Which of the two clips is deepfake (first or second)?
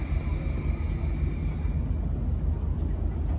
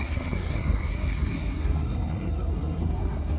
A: second